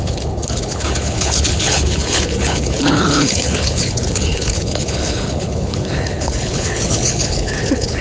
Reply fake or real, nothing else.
fake